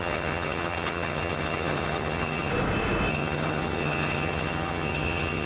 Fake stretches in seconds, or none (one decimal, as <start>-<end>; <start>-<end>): 0.0-2.5; 3.1-5.5